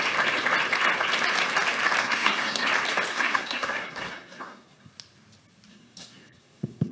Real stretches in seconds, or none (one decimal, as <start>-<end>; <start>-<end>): 0.0-2.0; 2.7-3.1; 4.9-5.7